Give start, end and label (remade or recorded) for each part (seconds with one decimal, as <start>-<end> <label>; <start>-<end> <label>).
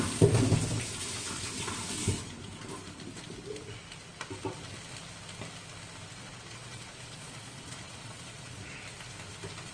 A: 0.0-6.2 recorded; 6.2-8.8 remade; 8.8-9.7 recorded